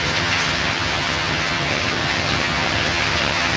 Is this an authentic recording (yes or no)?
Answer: no